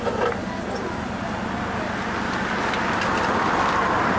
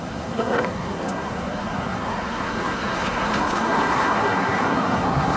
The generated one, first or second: second